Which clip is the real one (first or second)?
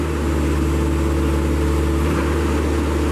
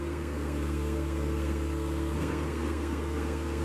first